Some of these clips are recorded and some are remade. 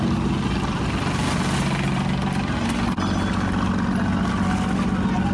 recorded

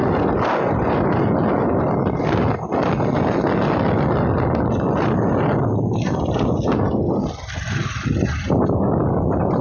recorded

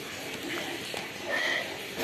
recorded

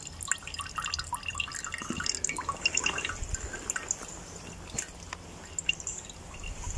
recorded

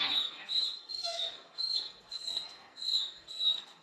remade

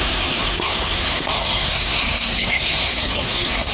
remade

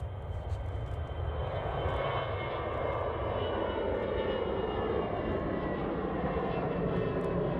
recorded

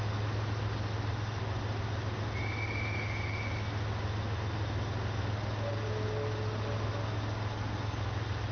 recorded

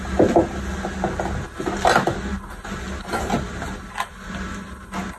recorded